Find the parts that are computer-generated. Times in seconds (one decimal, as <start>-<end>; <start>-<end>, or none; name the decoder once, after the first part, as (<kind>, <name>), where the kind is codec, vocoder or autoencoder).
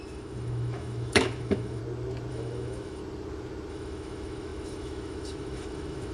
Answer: 0.0-1.8 (autoencoder, DAC-VAE); 2.3-3.0; 3.7-6.1